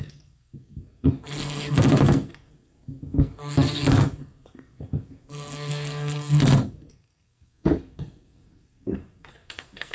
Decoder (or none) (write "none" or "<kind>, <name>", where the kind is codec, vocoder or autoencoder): codec, SNAC